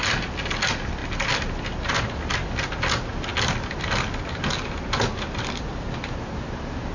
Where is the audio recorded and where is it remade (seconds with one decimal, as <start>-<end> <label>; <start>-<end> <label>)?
0.0-6.9 recorded